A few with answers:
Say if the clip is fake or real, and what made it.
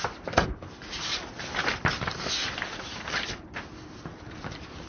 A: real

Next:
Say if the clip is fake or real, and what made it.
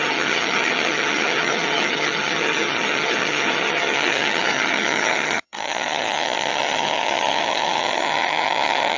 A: fake, vocoder, HiFi-GAN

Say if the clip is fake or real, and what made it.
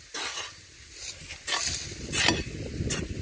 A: real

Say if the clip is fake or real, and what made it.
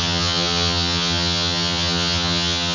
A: fake, vocoder, HiFi-GAN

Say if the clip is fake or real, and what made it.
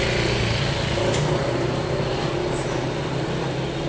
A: real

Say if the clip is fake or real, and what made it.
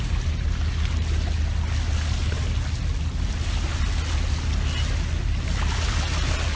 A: real